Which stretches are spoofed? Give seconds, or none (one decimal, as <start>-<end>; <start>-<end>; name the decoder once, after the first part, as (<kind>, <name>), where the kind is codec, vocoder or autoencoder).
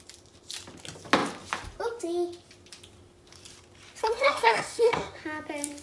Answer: 4.0-5.2 (codec, SNAC)